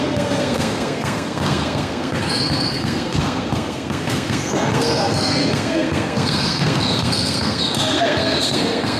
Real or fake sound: fake